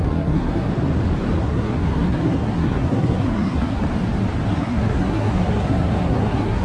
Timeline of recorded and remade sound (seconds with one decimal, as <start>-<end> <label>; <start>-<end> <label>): 0.0-0.7 remade; 0.7-1.4 recorded; 1.4-3.8 remade; 3.8-4.5 recorded; 4.5-6.6 remade